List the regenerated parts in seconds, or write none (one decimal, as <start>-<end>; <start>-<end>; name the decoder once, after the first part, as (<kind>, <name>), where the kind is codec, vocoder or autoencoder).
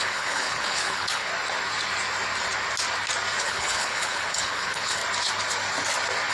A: 0.0-1.3 (codec, HILCodec); 3.4-5.0